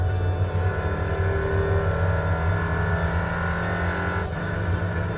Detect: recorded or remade recorded